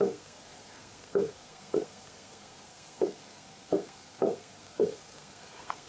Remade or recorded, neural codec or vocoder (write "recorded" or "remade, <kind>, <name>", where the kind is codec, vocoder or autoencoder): remade, codec, SNAC